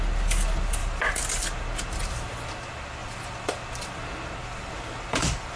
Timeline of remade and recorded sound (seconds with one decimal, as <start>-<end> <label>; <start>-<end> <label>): 0.0-0.8 recorded; 0.8-1.3 remade; 1.3-3.0 recorded; 3.0-3.5 remade; 3.5-4.4 recorded; 4.4-5.6 remade